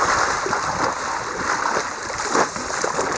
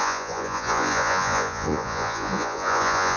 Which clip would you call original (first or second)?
first